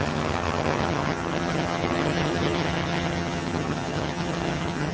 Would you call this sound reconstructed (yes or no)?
yes